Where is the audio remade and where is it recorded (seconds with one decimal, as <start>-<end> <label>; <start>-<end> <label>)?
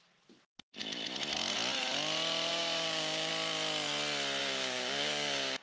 0.0-2.5 recorded; 2.5-3.3 remade; 3.3-4.4 recorded; 4.4-5.6 remade